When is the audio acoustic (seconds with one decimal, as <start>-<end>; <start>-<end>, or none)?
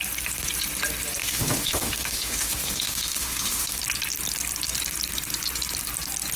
0.0-1.2; 3.8-6.4